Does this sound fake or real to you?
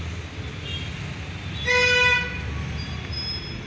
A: real